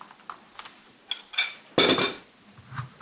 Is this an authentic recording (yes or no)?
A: yes